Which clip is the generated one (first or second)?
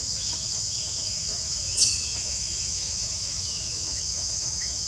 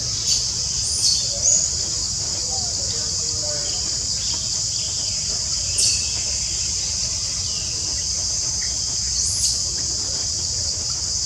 first